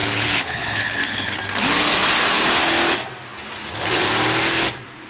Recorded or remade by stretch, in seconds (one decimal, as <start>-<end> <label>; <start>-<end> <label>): 0.0-1.4 remade; 1.4-5.1 recorded